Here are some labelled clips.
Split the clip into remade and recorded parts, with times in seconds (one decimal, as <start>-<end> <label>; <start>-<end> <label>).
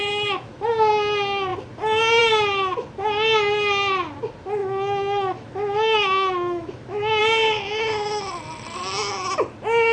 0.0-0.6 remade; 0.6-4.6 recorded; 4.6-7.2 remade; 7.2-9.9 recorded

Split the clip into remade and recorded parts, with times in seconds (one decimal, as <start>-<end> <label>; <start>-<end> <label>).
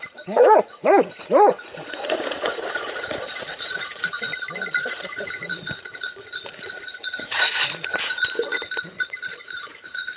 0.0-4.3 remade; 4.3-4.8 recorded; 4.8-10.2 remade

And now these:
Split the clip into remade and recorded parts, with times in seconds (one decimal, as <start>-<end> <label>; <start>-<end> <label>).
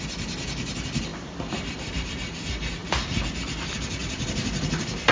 0.0-1.1 recorded; 1.1-2.1 remade; 2.1-2.8 recorded; 2.8-3.3 remade; 3.3-4.0 recorded; 4.0-5.1 remade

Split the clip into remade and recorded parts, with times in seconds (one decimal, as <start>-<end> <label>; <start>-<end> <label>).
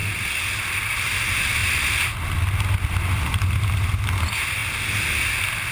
0.0-5.7 recorded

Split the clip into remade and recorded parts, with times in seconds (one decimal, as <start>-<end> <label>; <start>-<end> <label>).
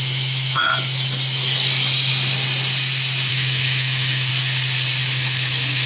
0.0-0.7 remade; 0.7-3.3 recorded; 3.3-4.3 remade; 4.3-5.0 recorded; 5.0-5.9 remade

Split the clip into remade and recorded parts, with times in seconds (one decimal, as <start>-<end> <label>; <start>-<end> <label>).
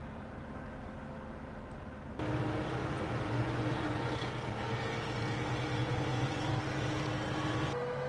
0.0-2.8 recorded; 2.8-4.3 remade; 4.3-5.8 recorded; 5.8-6.5 remade; 6.5-8.1 recorded